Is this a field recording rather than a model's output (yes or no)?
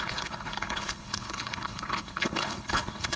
no